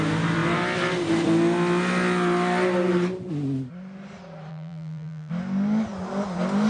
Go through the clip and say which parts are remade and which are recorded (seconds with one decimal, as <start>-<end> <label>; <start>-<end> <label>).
0.0-4.5 recorded; 4.5-5.3 remade; 5.3-6.7 recorded